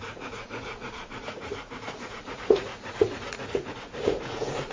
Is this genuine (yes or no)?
no